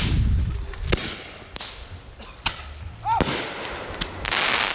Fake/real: real